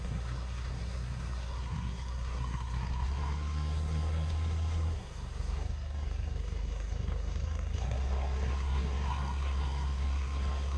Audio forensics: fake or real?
fake